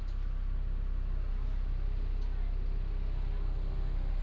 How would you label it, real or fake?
real